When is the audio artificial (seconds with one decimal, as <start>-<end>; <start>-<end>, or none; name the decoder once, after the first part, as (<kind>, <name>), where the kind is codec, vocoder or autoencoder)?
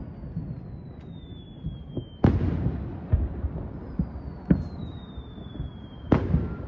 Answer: none